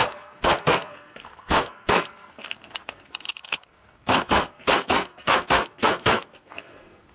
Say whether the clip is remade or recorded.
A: remade